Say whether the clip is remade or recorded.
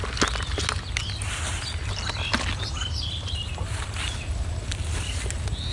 recorded